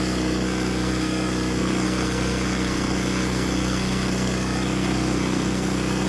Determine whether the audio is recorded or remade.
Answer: remade